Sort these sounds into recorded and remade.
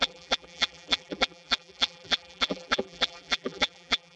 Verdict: remade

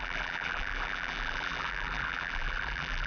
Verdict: remade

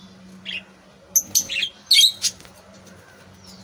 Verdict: recorded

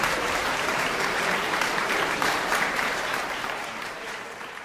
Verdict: remade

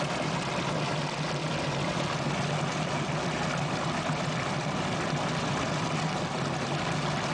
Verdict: recorded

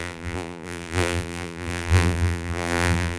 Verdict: remade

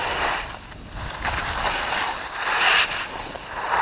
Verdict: recorded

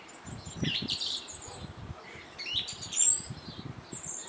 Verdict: remade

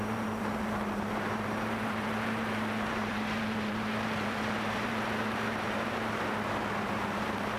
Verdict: remade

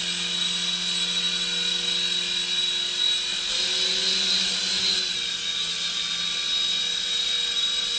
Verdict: recorded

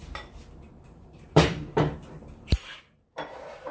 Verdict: remade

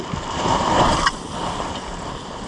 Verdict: recorded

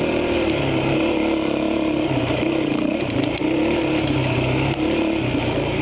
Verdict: remade